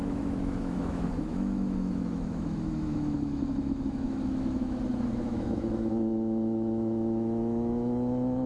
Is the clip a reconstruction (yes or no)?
yes